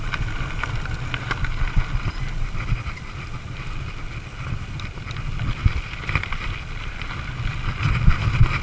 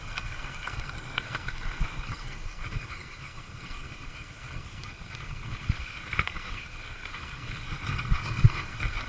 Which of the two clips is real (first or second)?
first